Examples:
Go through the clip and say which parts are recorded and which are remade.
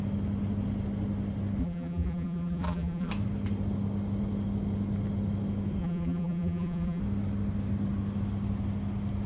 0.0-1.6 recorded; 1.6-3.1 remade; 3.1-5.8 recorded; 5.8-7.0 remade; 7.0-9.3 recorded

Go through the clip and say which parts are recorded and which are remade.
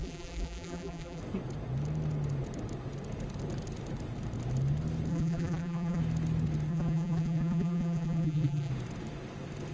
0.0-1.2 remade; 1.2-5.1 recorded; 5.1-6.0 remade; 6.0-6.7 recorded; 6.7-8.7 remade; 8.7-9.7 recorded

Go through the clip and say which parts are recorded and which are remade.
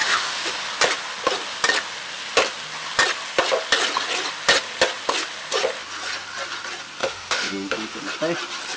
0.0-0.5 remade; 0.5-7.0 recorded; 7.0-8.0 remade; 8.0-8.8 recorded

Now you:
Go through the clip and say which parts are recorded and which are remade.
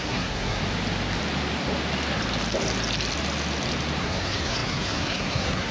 0.0-0.6 remade; 0.6-4.0 recorded; 4.0-5.7 remade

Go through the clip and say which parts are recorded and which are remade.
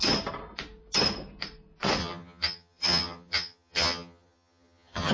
0.0-2.0 recorded; 2.0-5.1 remade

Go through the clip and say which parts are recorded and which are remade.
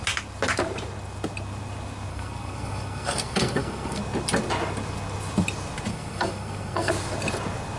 0.0-2.1 recorded; 2.1-4.0 remade; 4.0-5.9 recorded; 5.9-6.9 remade; 6.9-7.8 recorded